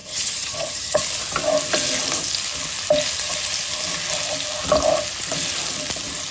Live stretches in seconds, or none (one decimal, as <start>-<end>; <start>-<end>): 1.0-6.3